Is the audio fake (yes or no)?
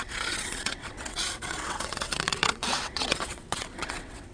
yes